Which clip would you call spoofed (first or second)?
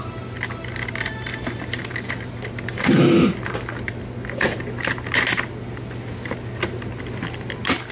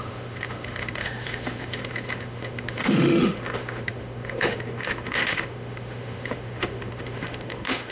second